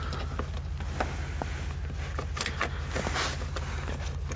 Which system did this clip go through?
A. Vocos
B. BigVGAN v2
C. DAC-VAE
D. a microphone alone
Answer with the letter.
D